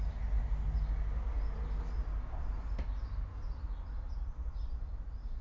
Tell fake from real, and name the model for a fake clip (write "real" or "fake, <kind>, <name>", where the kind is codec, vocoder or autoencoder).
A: real